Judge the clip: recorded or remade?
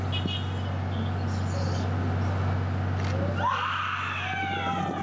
recorded